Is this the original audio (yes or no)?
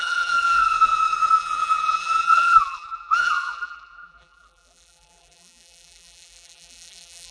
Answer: no